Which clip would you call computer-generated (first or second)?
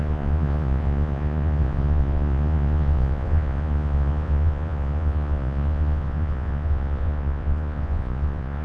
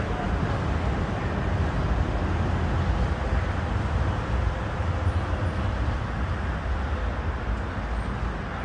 first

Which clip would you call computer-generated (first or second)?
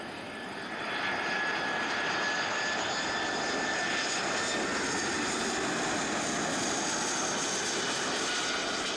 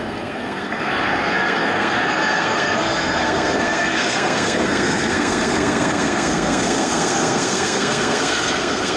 second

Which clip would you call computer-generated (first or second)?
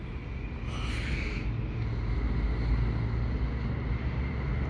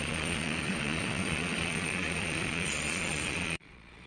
second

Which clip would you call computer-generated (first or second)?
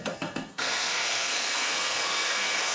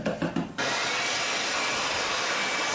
first